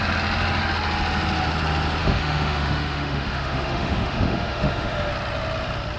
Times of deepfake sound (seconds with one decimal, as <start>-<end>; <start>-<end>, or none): 2.0-5.1